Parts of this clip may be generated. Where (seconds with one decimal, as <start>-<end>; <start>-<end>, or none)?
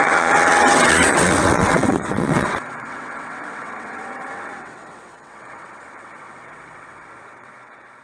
0.0-8.0